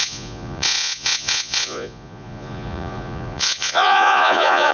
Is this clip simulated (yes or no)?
yes